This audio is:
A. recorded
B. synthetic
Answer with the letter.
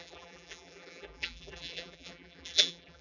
B